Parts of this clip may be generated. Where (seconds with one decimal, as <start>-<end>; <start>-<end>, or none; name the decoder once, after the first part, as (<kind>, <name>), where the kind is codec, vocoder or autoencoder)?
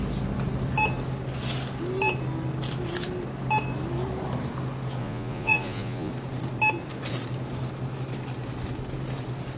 5.0-6.1 (vocoder, Vocos)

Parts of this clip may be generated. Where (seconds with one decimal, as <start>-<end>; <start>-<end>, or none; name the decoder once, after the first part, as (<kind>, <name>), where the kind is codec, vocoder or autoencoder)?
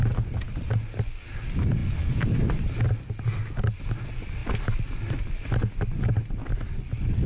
none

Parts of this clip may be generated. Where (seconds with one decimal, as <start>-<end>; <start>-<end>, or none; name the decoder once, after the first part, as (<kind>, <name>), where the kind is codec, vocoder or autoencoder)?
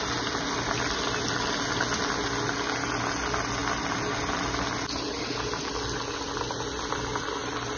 none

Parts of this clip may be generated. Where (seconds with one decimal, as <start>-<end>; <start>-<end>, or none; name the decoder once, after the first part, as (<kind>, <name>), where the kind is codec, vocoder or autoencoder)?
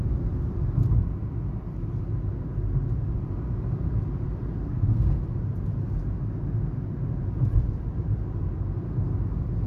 4.6-5.2 (codec, SNAC)